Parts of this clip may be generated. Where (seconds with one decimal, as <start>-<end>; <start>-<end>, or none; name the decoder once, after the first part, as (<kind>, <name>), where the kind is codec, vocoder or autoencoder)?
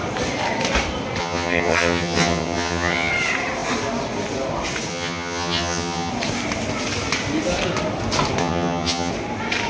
1.2-3.1 (vocoder, HiFi-GAN); 4.9-6.1; 8.4-9.1